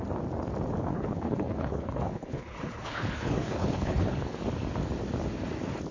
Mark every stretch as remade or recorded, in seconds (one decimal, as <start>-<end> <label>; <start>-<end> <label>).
0.0-0.9 recorded; 0.9-4.4 remade; 4.4-5.9 recorded